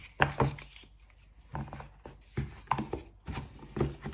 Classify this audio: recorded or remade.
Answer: recorded